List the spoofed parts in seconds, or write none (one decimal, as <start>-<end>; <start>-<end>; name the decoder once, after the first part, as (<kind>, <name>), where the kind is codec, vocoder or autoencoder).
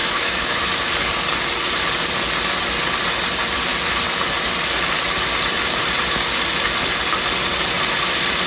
0.0-0.7 (autoencoder, DAC-VAE)